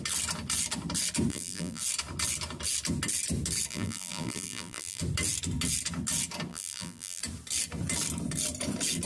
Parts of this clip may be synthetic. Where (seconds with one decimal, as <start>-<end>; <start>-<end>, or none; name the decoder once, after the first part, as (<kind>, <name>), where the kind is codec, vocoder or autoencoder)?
1.3-1.8 (vocoder, BigVGAN v2); 3.7-5.0; 6.5-7.2